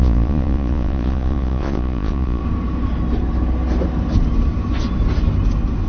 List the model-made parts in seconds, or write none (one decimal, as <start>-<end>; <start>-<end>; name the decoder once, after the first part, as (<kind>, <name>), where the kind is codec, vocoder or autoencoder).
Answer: 0.0-2.4 (vocoder, Vocos)